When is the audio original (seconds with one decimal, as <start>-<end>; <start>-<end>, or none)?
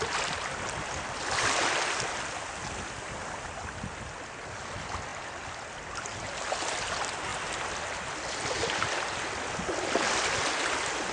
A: 0.0-11.1